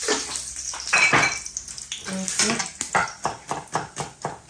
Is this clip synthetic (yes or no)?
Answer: no